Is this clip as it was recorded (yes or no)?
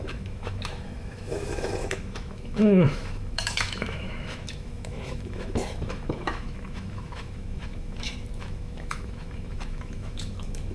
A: no